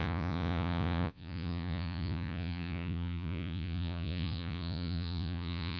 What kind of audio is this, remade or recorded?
remade